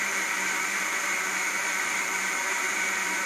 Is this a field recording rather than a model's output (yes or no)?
no